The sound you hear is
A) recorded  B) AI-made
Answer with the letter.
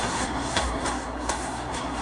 B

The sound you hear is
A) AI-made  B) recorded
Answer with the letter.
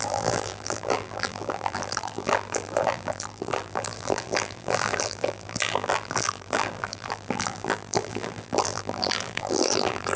A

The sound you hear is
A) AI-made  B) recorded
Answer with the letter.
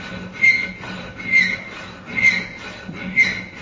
B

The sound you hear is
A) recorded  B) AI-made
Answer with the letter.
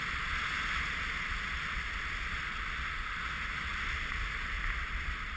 A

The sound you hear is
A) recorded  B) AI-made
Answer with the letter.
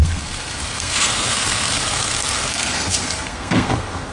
B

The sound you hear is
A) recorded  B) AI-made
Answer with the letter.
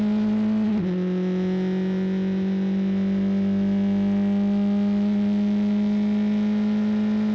A